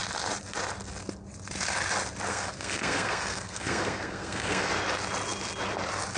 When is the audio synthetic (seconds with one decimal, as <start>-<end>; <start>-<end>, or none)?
2.3-4.7